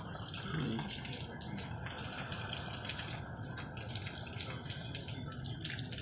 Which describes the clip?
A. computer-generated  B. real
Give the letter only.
B